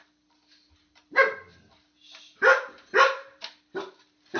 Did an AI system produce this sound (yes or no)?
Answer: no